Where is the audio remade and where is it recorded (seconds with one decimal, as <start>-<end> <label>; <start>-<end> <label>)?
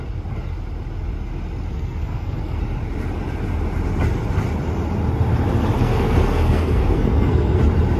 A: 0.0-1.7 recorded; 1.7-2.6 remade; 2.6-5.8 recorded; 5.8-7.6 remade; 7.6-8.0 recorded